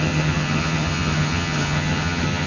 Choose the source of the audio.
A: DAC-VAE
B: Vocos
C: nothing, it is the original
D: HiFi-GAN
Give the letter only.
D